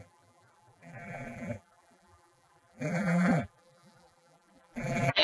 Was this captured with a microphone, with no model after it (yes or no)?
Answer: no